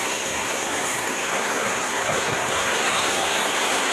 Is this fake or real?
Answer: fake